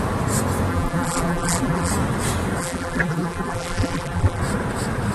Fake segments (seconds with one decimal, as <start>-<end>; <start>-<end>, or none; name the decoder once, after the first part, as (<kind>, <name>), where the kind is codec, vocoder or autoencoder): 0.7-1.9 (vocoder, BigVGAN v2); 2.6-4.4